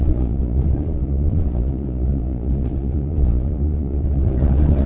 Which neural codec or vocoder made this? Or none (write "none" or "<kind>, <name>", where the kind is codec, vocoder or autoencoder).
vocoder, Vocos